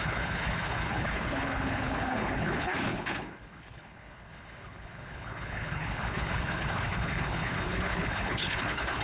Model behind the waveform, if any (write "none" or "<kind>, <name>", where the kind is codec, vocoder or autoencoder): codec, HILCodec